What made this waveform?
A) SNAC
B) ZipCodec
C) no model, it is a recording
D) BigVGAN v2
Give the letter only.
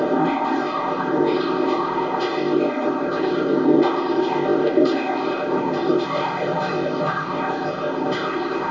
B